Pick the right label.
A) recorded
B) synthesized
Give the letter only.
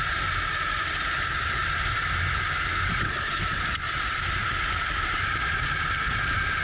A